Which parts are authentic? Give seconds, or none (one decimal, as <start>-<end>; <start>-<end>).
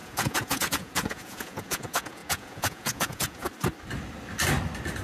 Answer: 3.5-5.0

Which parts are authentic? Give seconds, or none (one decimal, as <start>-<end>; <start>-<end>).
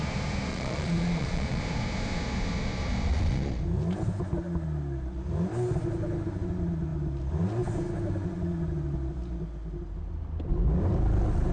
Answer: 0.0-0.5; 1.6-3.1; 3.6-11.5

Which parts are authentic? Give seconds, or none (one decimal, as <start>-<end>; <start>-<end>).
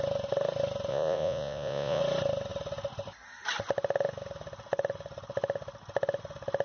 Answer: 0.0-0.9; 2.0-6.6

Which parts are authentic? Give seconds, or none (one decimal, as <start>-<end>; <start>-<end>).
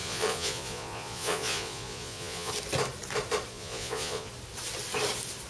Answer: 2.5-3.5; 4.3-5.5